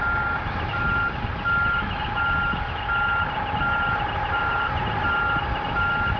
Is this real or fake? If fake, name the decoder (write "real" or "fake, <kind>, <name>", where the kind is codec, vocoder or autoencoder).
real